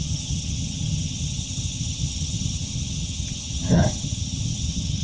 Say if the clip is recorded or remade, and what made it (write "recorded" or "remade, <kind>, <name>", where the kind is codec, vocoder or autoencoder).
remade, vocoder, HiFi-GAN